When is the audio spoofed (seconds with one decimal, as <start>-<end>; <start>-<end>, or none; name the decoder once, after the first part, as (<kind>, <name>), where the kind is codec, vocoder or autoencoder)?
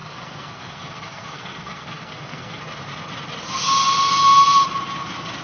0.0-2.6 (codec, SNAC)